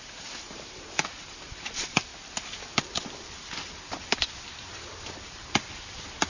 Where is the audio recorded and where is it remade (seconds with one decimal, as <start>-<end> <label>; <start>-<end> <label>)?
0.0-2.1 remade; 2.1-5.1 recorded; 5.1-6.3 remade